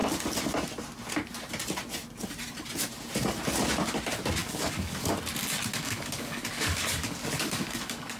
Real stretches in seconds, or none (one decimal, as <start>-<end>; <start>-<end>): 0.0-4.4; 5.2-5.7